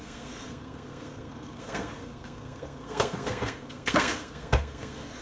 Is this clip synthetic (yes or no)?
yes